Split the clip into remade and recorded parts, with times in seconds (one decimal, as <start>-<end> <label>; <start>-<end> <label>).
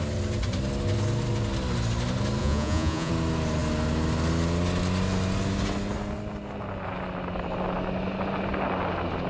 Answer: 0.0-2.4 recorded; 2.4-3.1 remade; 3.1-9.3 recorded